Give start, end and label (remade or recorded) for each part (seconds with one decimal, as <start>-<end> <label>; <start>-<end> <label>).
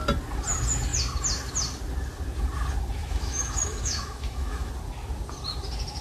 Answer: 0.0-3.0 recorded; 3.0-4.7 remade; 4.7-6.0 recorded